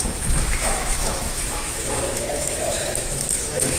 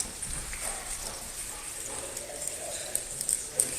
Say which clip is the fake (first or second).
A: first